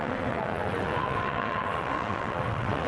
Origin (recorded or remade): remade